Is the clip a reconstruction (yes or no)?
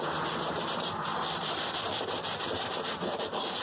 no